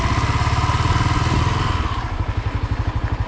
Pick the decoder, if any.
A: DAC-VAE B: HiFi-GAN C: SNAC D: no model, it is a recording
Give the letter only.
D